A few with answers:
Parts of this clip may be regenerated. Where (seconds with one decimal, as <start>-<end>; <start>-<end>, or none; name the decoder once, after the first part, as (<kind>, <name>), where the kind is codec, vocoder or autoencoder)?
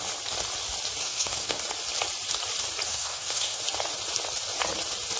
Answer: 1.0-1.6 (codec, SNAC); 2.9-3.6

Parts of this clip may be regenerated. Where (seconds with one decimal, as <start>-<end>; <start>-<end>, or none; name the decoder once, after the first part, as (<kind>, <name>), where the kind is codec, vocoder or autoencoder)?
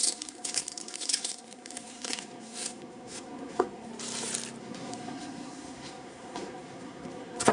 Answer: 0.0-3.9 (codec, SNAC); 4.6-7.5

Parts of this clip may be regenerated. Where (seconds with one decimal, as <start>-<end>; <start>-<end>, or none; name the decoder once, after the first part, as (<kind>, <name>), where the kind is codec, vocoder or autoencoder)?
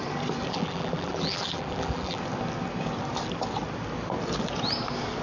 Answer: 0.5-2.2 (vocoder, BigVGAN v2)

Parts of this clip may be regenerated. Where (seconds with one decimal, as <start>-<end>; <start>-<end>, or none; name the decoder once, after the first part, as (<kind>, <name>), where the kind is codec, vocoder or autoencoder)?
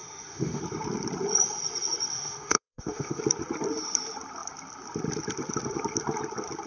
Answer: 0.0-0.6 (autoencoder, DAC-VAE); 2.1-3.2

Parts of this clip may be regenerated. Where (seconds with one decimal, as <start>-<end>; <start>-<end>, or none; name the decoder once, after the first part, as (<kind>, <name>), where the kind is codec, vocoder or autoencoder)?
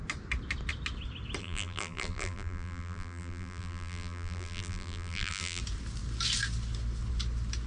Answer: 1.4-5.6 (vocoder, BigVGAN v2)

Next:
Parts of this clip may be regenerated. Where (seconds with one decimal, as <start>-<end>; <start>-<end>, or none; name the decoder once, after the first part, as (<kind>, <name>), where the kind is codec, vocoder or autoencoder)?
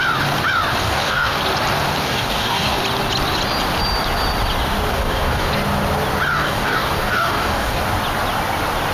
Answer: 0.8-1.4 (codec, DAC); 2.0-2.8; 4.9-5.5; 6.3-7.8